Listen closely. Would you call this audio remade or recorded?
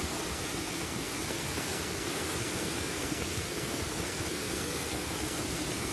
remade